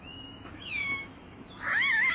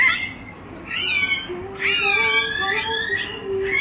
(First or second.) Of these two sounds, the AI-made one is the first